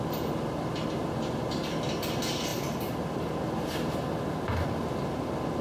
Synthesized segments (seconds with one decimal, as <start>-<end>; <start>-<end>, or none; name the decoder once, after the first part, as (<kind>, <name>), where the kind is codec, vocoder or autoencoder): 1.0-1.5 (vocoder, BigVGAN v2); 2.5-3.3